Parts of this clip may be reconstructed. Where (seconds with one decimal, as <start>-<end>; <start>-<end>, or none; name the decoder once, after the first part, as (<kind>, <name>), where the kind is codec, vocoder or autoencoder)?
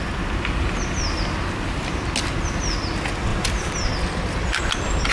3.3-3.9 (vocoder, BigVGAN v2)